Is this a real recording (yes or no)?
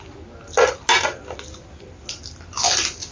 yes